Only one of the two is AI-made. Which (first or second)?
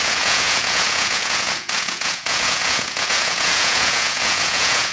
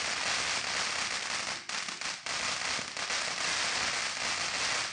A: first